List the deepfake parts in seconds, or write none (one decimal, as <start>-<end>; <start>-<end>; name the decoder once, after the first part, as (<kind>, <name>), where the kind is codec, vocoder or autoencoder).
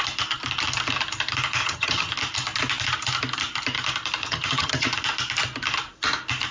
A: 1.6-2.1 (vocoder, HiFi-GAN); 4.2-4.9